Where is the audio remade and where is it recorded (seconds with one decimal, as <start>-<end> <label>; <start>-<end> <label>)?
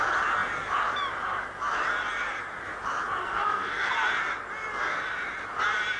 0.0-3.2 recorded; 3.2-3.9 remade; 3.9-6.0 recorded